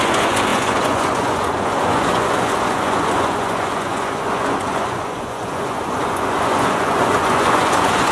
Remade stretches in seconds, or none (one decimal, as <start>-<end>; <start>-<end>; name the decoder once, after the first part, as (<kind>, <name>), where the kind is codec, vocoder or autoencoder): 0.0-8.1 (vocoder, Vocos)